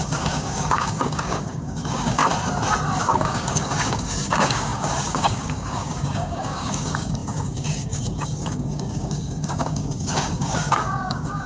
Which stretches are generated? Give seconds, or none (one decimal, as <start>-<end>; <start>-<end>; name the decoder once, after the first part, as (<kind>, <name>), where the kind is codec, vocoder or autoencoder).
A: 0.0-2.2 (codec, DAC); 3.0-11.5

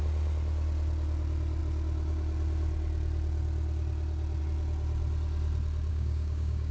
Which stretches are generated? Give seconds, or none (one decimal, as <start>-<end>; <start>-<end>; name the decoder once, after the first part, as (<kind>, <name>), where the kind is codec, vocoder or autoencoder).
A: 5.9-6.7 (codec, DAC)

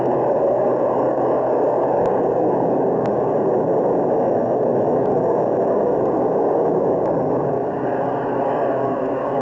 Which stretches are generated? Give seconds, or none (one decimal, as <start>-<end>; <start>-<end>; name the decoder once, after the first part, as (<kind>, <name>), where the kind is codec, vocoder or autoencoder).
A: 0.0-3.3 (codec, DAC); 4.1-9.4